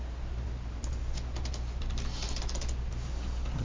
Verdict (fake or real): real